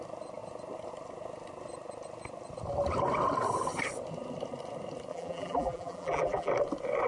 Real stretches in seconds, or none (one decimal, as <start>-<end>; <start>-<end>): 0.0-5.1; 6.5-7.1